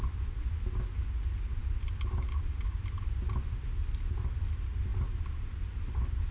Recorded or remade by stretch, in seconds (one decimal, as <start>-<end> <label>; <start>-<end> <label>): 0.0-6.3 recorded